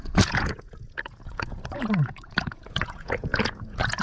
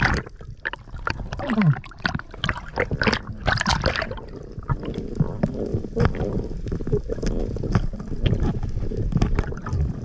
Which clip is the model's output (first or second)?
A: first